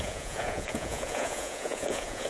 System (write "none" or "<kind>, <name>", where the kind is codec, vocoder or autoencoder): vocoder, Vocos